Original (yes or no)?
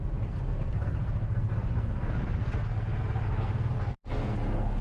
no